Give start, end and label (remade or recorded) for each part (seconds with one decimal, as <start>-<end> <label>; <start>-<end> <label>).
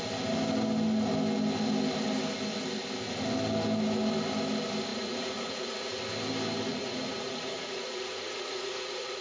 0.0-4.9 recorded; 4.9-6.0 remade; 6.0-6.7 recorded; 6.7-9.2 remade